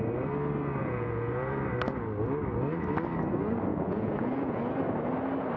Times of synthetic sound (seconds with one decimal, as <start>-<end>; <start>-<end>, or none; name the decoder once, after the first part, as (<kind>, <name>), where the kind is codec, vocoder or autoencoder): 0.8-1.6 (vocoder, Vocos); 3.7-4.6